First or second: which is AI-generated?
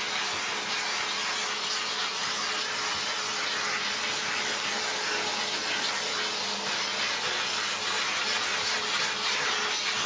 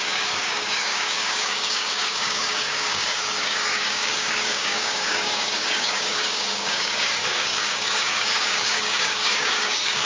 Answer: second